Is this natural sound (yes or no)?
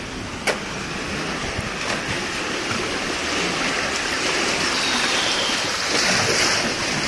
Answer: yes